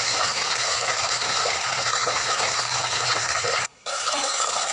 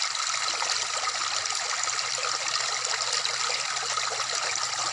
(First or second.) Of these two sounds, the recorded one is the second